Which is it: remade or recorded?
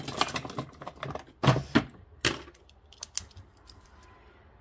recorded